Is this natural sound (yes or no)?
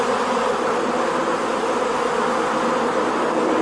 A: yes